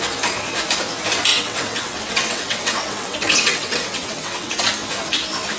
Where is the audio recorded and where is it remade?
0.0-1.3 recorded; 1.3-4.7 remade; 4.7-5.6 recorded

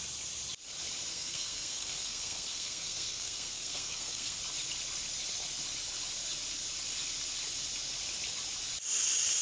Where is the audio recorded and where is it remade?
0.0-1.1 recorded; 1.1-4.4 remade; 4.4-9.4 recorded